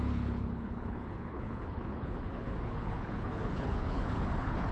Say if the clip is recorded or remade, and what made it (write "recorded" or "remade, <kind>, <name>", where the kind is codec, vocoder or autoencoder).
remade, codec, HILCodec